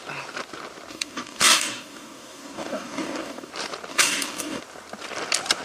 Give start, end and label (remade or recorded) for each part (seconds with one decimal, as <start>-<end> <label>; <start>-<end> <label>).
0.0-0.9 recorded; 0.9-3.5 remade; 3.5-3.9 recorded; 3.9-4.6 remade; 4.6-5.6 recorded